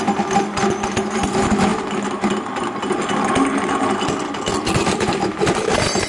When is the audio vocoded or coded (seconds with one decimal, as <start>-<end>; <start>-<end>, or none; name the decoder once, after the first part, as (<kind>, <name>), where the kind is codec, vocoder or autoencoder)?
none